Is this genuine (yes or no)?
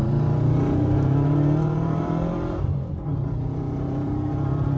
no